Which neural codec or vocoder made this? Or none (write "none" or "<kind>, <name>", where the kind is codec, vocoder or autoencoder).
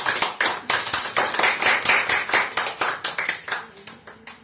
none